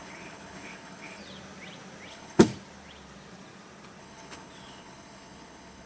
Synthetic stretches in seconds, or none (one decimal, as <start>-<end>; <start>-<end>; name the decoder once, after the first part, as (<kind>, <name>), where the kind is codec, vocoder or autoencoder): 0.0-1.2 (codec, HILCodec); 2.1-2.5; 4.0-5.9